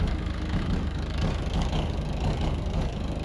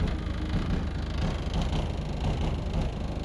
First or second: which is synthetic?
first